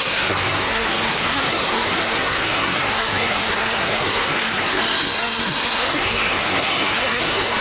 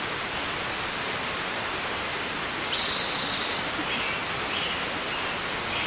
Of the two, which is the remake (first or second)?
first